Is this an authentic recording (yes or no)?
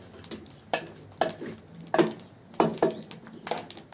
yes